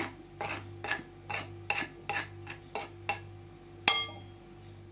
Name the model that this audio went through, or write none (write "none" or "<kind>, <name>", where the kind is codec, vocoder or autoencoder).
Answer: none